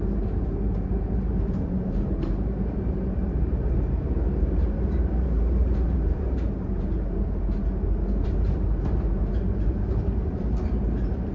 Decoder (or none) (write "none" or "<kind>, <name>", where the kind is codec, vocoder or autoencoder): vocoder, BigVGAN v2